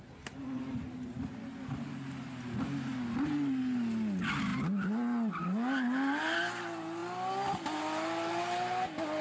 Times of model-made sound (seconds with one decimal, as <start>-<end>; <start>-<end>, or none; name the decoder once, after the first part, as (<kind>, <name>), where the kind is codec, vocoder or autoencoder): none